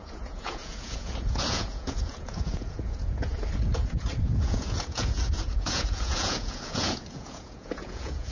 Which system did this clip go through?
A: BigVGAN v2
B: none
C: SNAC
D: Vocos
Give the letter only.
D